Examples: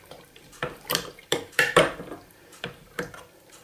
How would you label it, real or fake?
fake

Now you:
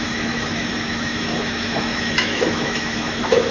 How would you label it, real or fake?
fake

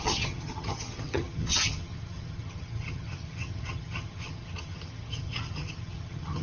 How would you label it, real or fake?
fake